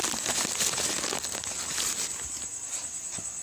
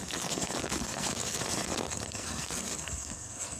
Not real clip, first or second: second